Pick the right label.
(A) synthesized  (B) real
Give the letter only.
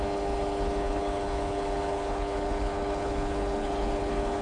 A